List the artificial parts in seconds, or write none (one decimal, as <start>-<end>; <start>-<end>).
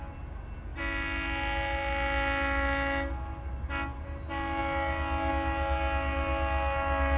none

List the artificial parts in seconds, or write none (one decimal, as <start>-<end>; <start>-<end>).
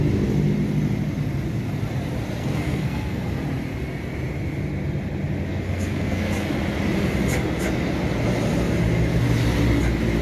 2.4-3.3; 5.5-6.5